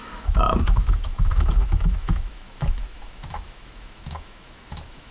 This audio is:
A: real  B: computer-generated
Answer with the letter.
B